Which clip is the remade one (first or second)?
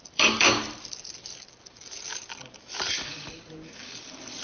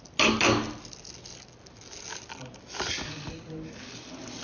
first